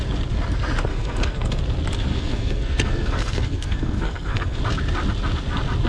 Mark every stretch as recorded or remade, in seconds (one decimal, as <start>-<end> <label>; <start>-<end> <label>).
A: 0.0-0.9 recorded; 0.9-1.6 remade; 1.6-2.1 recorded; 2.1-4.6 remade; 4.6-5.9 recorded

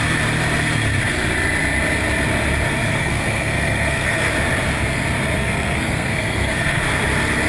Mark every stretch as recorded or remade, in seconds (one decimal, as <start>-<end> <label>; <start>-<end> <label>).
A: 0.0-2.9 recorded; 2.9-4.3 remade; 4.3-5.4 recorded; 5.4-6.8 remade; 6.8-7.5 recorded

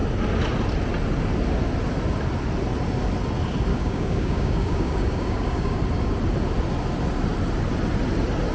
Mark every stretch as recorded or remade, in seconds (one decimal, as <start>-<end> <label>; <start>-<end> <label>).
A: 0.0-3.7 recorded; 3.7-5.8 remade; 5.8-8.5 recorded